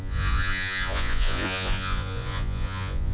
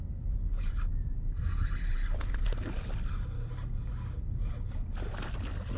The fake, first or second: first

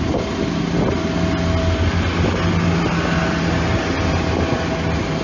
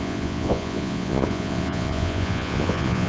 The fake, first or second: second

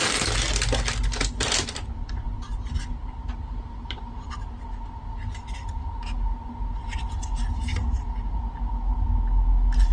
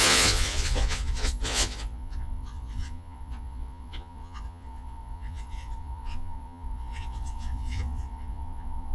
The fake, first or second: second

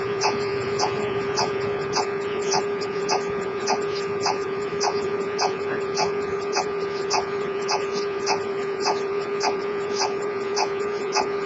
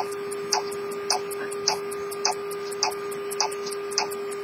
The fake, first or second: first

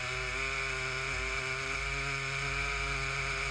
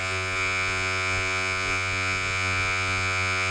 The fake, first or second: second